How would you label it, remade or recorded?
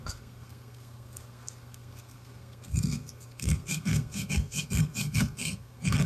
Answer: remade